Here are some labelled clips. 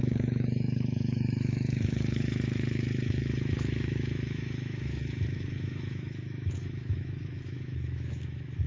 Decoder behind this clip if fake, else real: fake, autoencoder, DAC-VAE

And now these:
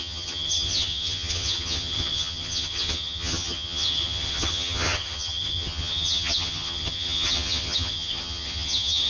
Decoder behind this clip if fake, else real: fake, vocoder, HiFi-GAN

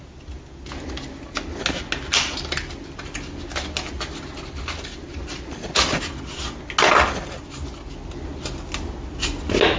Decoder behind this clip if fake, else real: real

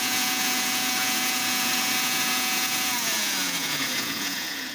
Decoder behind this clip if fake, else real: fake, vocoder, Vocos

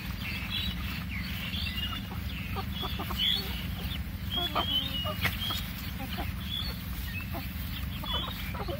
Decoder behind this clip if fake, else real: real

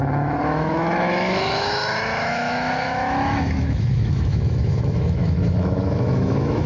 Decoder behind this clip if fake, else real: fake, autoencoder, DAC-VAE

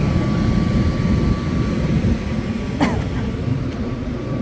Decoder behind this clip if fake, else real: real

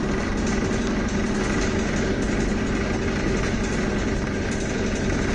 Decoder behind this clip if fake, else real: real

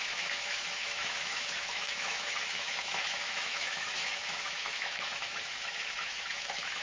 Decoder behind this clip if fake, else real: fake, autoencoder, DAC-VAE